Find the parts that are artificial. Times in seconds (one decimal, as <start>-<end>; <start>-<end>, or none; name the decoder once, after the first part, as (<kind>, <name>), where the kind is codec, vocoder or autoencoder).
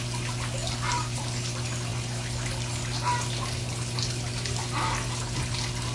0.6-1.2 (vocoder, BigVGAN v2)